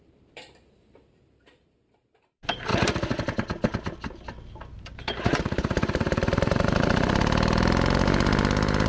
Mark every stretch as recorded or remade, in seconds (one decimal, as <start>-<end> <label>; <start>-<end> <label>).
0.0-2.7 remade; 2.7-4.7 recorded; 4.7-8.9 remade